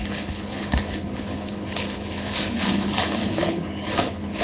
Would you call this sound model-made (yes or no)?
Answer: yes